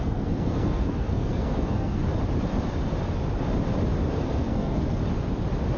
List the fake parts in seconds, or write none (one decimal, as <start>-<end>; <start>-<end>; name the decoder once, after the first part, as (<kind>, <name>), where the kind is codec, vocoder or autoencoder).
0.0-2.0 (codec, SNAC); 4.1-5.0